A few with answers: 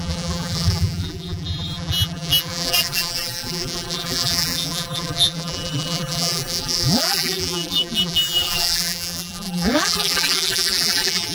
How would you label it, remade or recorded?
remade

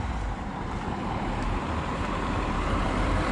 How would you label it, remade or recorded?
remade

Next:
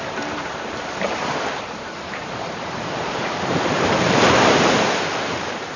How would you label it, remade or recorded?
remade